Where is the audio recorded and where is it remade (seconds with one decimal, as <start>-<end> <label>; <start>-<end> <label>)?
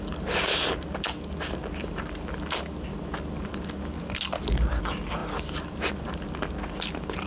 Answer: 0.0-7.3 recorded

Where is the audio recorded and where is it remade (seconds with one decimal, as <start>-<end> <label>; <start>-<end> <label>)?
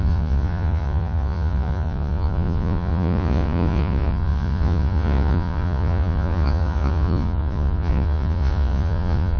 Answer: 0.0-9.4 remade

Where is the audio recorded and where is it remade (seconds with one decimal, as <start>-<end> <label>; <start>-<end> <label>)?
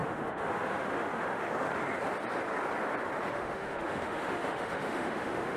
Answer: 0.0-1.8 remade; 1.8-3.3 recorded; 3.3-5.6 remade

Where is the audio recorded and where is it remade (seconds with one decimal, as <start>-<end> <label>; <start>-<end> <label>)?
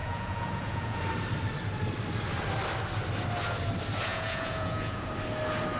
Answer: 0.0-1.0 remade; 1.0-4.1 recorded; 4.1-5.1 remade; 5.1-5.8 recorded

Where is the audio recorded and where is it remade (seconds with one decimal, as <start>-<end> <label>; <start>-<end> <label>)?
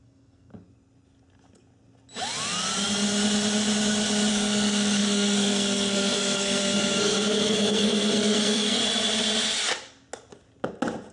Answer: 0.0-0.5 remade; 0.5-4.3 recorded; 4.3-8.8 remade; 8.8-11.1 recorded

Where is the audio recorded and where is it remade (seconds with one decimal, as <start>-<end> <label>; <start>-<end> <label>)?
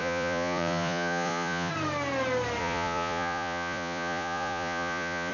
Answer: 0.0-1.7 remade; 1.7-2.6 recorded; 2.6-5.3 remade